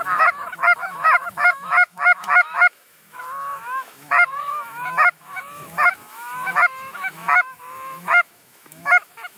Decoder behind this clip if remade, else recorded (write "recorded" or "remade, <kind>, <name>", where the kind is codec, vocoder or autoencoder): remade, autoencoder, DAC-VAE